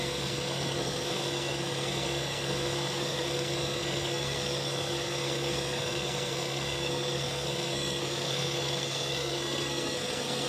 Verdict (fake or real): fake